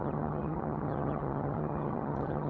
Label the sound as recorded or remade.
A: remade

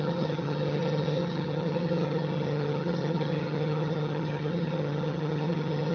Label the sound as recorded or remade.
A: remade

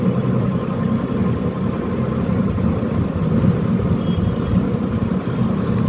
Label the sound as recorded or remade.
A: recorded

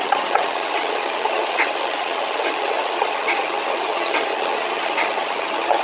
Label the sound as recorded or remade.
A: remade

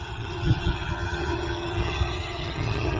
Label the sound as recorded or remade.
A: remade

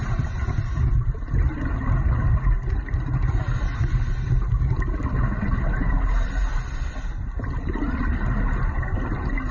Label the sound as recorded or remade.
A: recorded